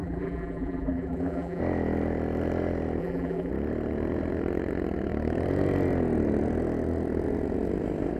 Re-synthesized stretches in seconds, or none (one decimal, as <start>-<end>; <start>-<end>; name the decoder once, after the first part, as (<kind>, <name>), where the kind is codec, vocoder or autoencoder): 0.0-1.6 (vocoder, BigVGAN v2); 3.0-3.5